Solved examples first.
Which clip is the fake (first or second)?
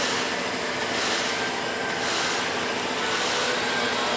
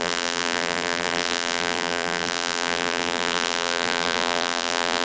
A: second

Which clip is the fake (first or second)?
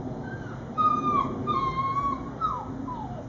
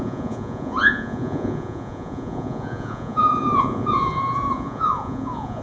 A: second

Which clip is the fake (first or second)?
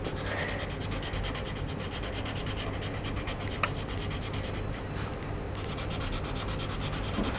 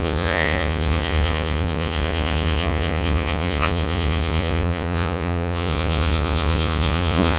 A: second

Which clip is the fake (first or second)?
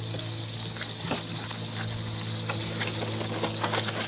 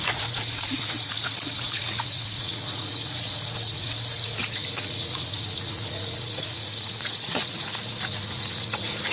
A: second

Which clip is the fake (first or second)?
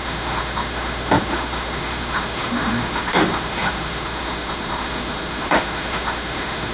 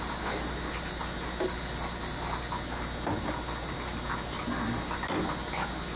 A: first